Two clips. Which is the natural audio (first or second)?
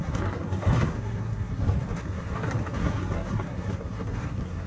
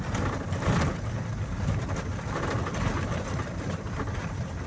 second